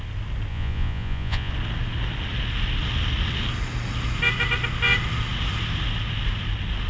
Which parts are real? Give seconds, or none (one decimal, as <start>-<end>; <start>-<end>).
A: 0.0-0.5; 1.5-6.9